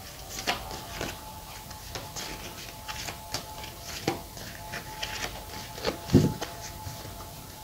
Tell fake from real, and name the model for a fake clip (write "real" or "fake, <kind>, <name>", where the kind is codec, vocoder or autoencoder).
real